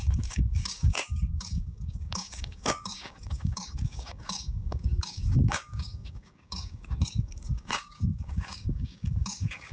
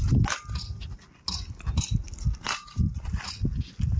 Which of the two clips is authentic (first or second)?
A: second